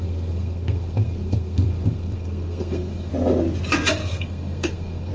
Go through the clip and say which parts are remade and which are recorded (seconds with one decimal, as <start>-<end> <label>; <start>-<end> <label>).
0.0-3.1 remade; 3.1-4.0 recorded; 4.0-5.1 remade